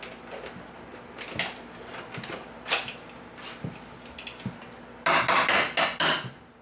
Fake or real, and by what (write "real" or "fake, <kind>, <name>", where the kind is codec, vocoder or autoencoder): real